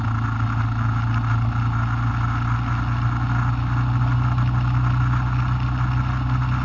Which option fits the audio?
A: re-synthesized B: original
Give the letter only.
B